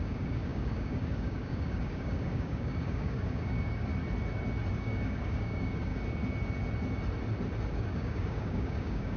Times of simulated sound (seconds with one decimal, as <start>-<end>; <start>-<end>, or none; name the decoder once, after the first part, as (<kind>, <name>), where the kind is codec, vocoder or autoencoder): 0.0-3.9 (codec, DAC); 4.7-5.9; 7.7-9.2